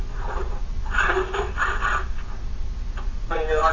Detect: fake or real real